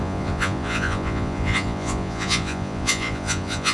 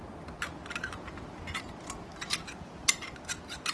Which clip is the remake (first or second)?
first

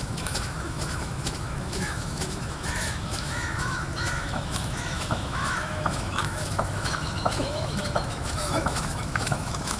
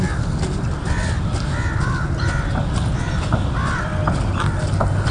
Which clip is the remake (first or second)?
first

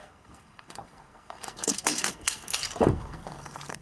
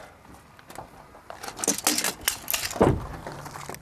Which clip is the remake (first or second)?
first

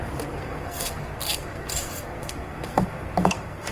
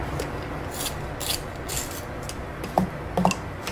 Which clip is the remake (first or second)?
first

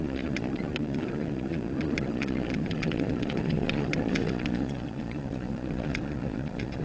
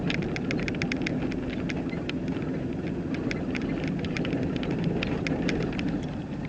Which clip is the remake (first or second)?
first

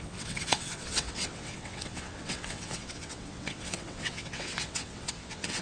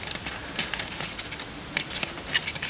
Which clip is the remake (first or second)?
first